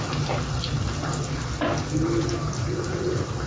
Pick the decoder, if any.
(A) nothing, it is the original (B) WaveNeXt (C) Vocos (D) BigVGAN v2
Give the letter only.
A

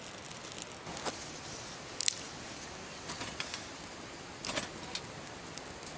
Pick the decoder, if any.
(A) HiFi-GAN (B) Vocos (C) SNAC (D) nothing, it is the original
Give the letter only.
D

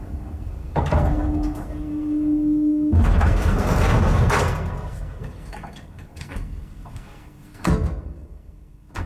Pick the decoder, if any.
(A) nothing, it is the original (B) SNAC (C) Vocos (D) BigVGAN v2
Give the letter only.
B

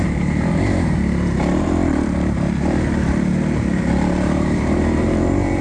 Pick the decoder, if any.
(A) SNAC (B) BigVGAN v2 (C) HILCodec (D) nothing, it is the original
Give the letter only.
B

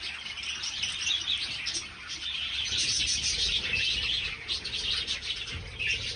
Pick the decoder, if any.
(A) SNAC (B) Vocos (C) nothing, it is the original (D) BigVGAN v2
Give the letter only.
C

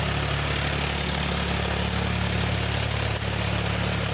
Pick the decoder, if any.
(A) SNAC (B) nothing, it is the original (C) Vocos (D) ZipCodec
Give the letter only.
B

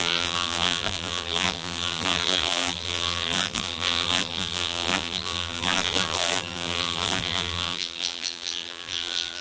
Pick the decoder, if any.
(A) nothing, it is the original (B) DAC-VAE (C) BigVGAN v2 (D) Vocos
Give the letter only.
C